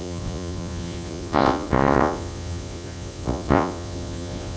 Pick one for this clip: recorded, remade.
remade